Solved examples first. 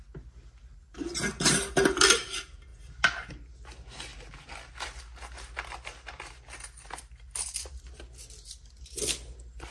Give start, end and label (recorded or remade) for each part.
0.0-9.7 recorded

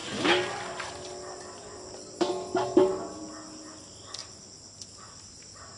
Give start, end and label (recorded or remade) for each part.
0.0-5.8 recorded

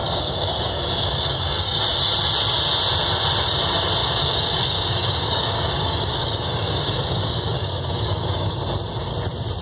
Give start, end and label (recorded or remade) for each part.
0.0-1.8 remade; 1.8-4.0 recorded; 4.0-8.6 remade; 8.6-9.6 recorded

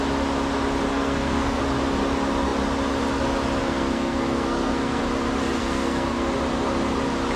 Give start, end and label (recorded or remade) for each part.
0.0-0.9 recorded; 0.9-1.6 remade; 1.6-3.6 recorded; 3.6-5.0 remade; 5.0-5.6 recorded; 5.6-6.3 remade; 6.3-7.4 recorded

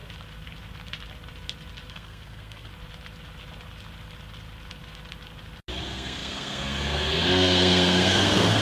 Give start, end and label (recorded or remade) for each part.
0.0-1.9 recorded; 1.9-2.7 remade; 2.7-5.8 recorded; 5.8-8.6 remade